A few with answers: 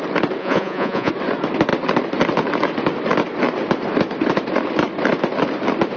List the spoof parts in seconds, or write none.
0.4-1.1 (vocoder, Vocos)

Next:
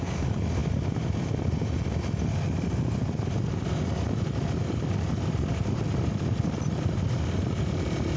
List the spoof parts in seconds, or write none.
none

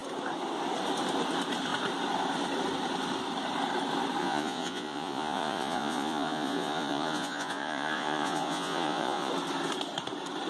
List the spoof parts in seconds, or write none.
4.2-9.3 (vocoder, Vocos)

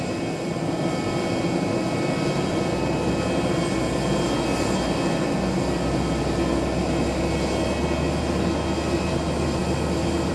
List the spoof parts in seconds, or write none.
none

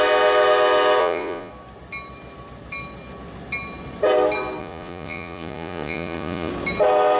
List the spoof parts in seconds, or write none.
1.0-1.5 (vocoder, Vocos); 4.6-6.5

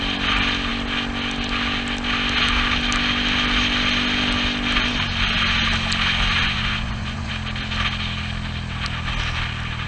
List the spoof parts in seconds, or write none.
6.4-7.3 (vocoder, Vocos)